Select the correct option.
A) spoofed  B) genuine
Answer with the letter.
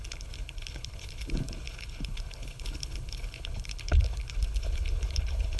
A